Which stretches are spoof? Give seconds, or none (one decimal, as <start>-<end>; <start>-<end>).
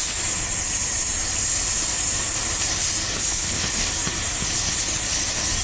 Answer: 3.3-3.9